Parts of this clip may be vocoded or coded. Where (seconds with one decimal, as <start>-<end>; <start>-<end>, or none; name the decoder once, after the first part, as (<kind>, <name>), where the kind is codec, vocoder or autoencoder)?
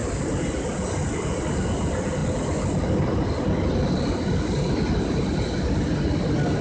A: none